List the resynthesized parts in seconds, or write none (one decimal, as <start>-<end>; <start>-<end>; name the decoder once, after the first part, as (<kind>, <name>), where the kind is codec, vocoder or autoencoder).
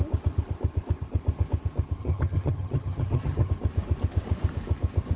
2.0-3.5 (vocoder, HiFi-GAN)